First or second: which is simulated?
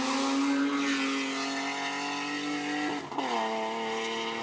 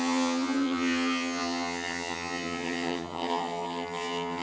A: second